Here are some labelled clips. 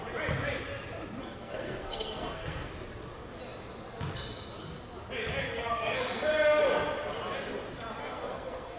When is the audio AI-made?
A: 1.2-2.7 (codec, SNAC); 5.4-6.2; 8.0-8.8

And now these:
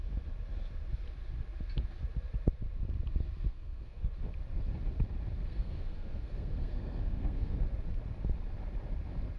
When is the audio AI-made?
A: 3.5-4.1 (codec, SNAC); 5.4-7.6

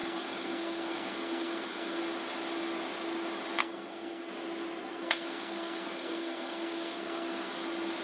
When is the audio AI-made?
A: 0.0-2.0 (codec, SNAC); 3.6-4.3; 4.8-7.5

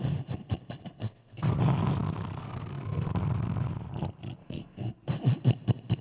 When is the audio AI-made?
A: 1.0-1.6 (codec, SNAC); 2.4-3.1; 4.4-4.9

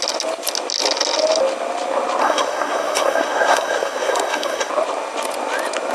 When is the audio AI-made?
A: 2.2-4.7 (codec, SNAC)

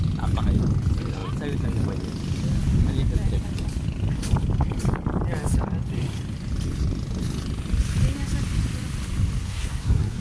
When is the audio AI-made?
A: 9.4-10.2 (codec, SNAC)

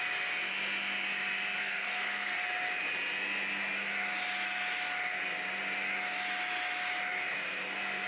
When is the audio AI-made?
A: 1.6-2.4 (codec, SNAC)